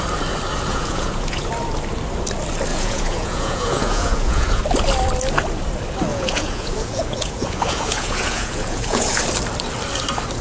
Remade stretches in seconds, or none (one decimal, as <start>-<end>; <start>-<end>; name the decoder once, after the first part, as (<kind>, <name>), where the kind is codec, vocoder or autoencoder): 0.7-1.5 (vocoder, Vocos); 2.7-4.6; 6.1-9.2